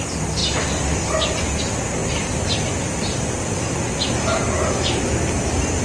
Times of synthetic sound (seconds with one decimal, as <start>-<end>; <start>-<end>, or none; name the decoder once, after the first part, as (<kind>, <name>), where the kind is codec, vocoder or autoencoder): none